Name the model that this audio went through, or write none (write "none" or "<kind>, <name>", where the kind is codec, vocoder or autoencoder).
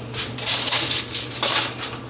none